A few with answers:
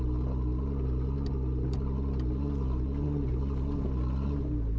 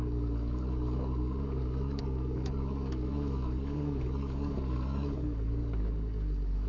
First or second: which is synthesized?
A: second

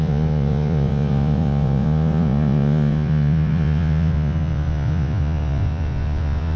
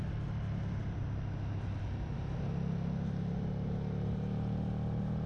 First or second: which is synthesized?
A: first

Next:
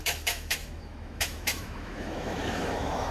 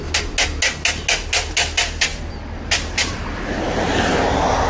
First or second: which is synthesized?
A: first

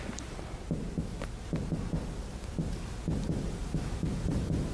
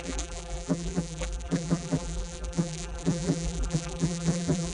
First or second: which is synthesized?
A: second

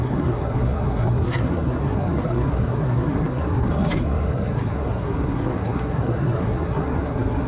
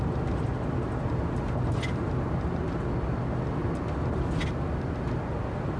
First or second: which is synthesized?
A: first